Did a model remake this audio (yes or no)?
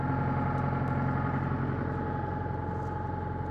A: no